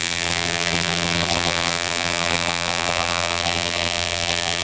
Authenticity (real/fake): fake